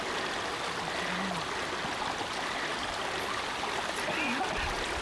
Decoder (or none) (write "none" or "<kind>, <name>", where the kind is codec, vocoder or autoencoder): none